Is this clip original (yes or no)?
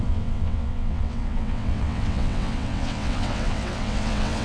no